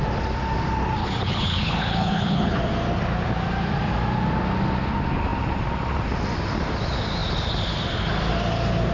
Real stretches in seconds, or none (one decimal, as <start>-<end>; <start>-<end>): 0.0-1.0; 2.6-8.9